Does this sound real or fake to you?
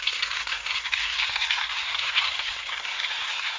fake